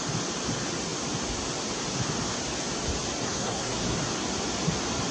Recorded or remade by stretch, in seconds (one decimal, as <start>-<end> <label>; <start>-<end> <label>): 0.0-3.2 recorded; 3.2-4.0 remade; 4.0-5.1 recorded

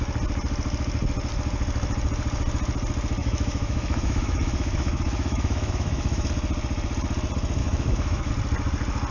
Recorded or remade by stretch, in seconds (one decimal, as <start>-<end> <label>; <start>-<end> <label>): 0.0-3.2 recorded; 3.2-6.3 remade; 6.3-7.6 recorded; 7.6-8.3 remade; 8.3-9.1 recorded

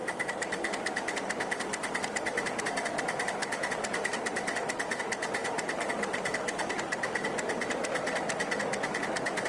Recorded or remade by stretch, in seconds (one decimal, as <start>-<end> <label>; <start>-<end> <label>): 0.0-2.6 remade; 2.6-3.4 recorded; 3.4-5.0 remade; 5.0-5.4 recorded; 5.4-6.7 remade; 6.7-9.5 recorded

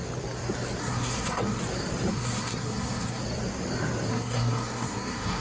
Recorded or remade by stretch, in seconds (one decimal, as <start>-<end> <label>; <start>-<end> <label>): 0.0-0.8 recorded; 0.8-1.6 remade; 1.6-2.1 recorded; 2.1-3.2 remade; 3.2-4.1 recorded; 4.1-5.4 remade

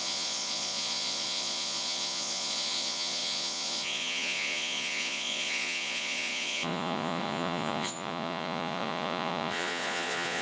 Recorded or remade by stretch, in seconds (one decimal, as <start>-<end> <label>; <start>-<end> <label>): 0.0-10.4 remade

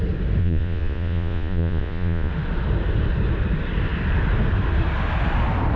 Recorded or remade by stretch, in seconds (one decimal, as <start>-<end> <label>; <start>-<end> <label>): 0.0-0.4 recorded; 0.4-2.3 remade; 2.3-5.8 recorded

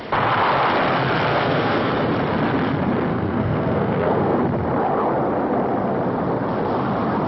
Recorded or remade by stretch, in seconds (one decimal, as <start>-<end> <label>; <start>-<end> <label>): 0.0-1.3 recorded; 1.3-1.9 remade; 1.9-3.1 recorded; 3.1-4.4 remade; 4.4-7.3 recorded